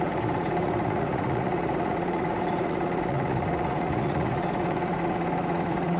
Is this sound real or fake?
fake